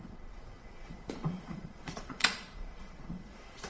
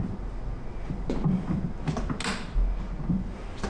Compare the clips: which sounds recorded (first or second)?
second